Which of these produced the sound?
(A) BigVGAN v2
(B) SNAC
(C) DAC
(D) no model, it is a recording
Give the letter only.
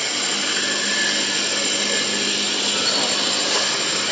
D